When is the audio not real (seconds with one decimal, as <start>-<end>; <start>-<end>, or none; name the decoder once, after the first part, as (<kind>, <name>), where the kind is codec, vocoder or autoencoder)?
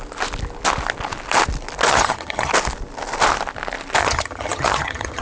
1.9-2.5 (vocoder, HiFi-GAN); 4.0-5.2